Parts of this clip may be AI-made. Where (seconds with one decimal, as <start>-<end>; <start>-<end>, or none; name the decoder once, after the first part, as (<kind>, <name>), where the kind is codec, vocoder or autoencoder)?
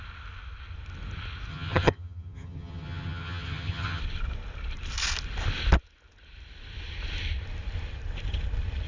1.5-4.0 (vocoder, HiFi-GAN)